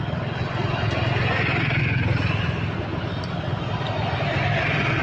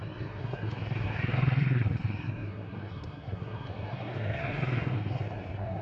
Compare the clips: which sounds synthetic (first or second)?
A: second